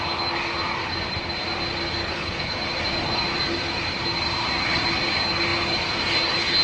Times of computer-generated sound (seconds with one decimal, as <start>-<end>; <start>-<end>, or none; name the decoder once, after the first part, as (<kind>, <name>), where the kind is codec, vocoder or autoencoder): 2.0-2.6 (codec, HILCodec)